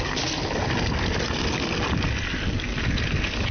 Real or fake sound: real